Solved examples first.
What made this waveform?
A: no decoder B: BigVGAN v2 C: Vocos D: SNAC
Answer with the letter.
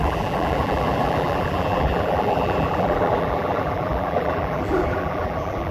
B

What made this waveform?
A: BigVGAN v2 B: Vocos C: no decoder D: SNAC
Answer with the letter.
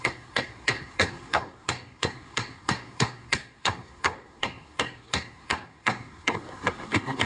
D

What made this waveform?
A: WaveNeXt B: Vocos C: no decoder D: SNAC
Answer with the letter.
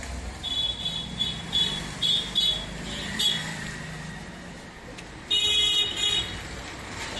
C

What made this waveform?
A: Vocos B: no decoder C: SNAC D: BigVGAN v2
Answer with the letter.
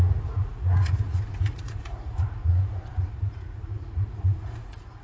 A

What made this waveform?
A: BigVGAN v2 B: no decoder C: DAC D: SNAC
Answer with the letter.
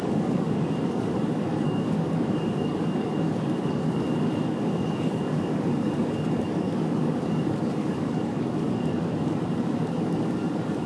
C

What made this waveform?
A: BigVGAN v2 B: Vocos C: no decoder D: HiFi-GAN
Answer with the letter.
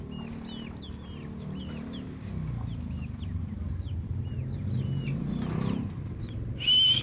C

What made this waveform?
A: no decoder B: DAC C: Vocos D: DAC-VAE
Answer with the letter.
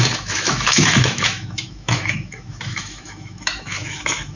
D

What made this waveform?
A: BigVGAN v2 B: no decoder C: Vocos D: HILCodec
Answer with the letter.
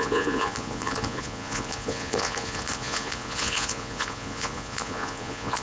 C